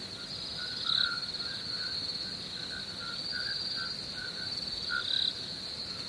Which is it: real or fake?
real